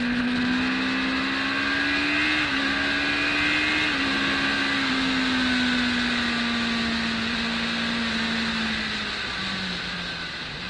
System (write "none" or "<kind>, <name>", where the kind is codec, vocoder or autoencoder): none